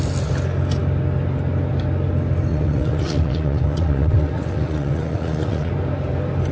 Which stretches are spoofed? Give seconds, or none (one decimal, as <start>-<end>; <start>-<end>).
2.5-5.7